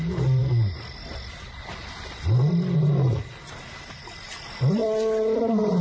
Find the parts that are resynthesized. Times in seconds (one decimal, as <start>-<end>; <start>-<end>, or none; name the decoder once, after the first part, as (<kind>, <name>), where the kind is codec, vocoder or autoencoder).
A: none